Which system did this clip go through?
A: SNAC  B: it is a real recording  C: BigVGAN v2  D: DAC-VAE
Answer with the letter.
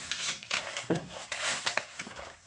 A